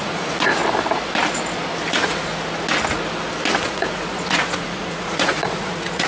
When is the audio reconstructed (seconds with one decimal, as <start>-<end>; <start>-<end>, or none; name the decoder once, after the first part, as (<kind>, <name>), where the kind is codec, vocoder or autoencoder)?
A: 0.0-0.6 (vocoder, Vocos); 1.9-2.3; 3.7-6.1